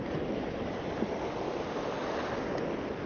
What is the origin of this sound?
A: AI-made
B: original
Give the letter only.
B